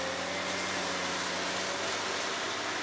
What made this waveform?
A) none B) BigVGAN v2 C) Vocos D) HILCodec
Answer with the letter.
A